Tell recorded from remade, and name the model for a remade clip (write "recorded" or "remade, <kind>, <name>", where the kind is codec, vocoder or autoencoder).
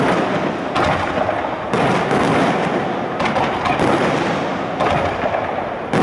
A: recorded